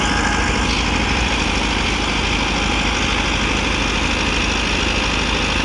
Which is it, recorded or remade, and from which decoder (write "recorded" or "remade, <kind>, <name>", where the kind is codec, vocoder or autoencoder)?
recorded